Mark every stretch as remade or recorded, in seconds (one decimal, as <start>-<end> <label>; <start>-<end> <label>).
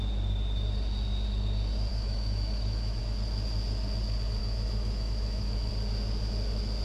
0.0-1.9 recorded; 1.9-3.0 remade; 3.0-4.4 recorded; 4.4-5.7 remade; 5.7-6.8 recorded